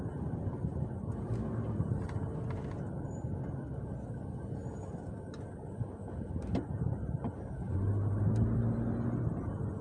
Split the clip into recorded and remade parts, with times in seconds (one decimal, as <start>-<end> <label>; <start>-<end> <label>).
0.0-9.8 recorded